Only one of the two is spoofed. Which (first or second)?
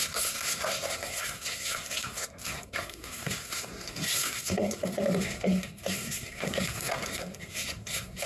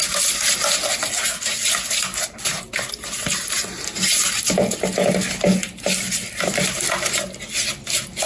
first